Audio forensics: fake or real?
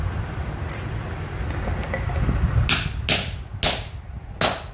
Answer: real